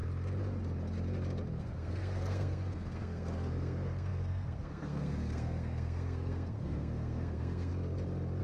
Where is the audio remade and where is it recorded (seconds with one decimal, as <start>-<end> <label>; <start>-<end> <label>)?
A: 0.0-1.6 recorded; 1.6-7.7 remade; 7.7-8.4 recorded